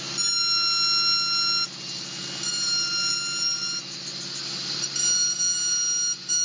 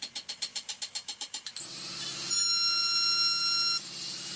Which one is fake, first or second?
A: second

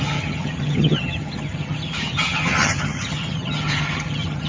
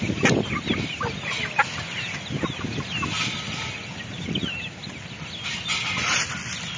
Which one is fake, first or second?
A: first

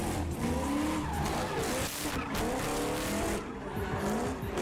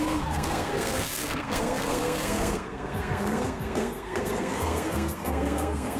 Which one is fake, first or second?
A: second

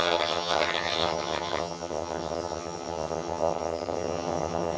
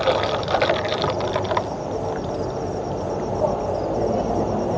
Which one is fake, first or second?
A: first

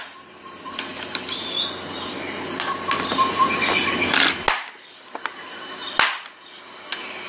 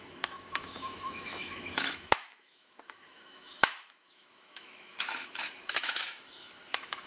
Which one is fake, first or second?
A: second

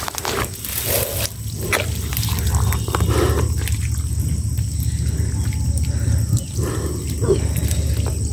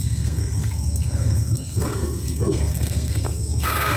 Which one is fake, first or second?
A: second